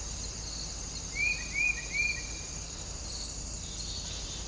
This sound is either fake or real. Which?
fake